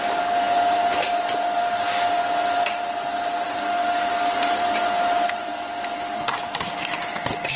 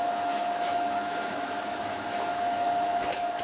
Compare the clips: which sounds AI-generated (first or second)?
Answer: second